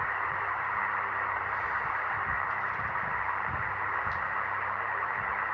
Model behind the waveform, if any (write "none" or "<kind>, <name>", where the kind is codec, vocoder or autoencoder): none